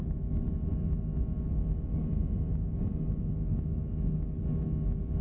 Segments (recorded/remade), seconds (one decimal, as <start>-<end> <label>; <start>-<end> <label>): 0.0-0.7 remade; 0.7-3.3 recorded; 3.3-5.2 remade